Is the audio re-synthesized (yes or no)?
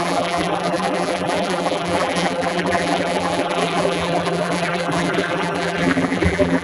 yes